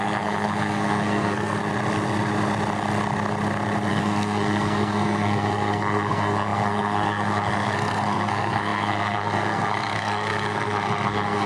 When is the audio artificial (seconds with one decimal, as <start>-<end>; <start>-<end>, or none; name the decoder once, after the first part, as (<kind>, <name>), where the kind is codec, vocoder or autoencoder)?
0.0-1.6 (codec, SNAC); 3.9-11.5